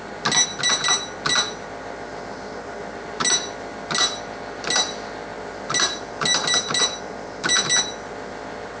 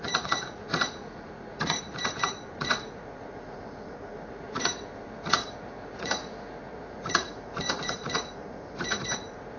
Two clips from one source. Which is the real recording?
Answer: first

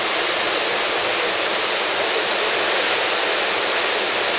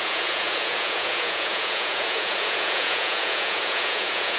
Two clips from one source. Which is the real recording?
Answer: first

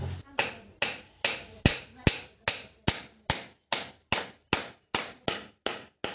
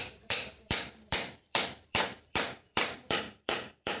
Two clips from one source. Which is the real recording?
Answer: first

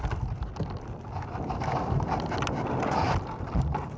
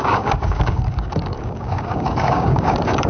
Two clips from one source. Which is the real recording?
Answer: first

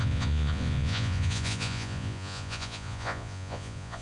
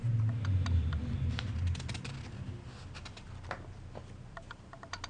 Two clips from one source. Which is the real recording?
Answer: second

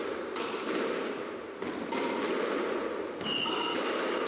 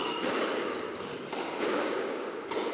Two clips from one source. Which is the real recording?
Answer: first